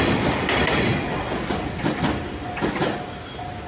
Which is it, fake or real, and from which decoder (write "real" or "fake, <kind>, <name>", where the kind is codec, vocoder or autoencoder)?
real